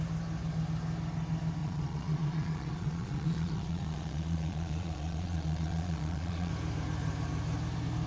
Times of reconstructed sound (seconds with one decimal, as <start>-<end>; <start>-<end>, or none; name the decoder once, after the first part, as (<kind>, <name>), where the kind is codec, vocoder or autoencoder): 1.6-6.5 (vocoder, Vocos)